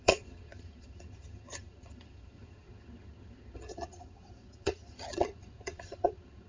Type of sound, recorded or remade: remade